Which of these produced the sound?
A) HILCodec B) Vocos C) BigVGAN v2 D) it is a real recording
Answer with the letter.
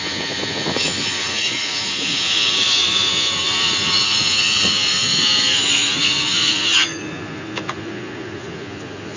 B